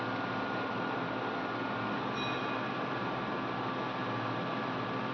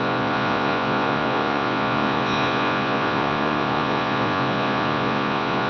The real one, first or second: first